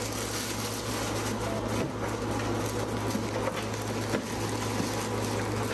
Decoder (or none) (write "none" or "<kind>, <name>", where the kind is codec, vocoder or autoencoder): none